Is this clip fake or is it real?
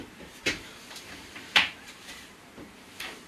fake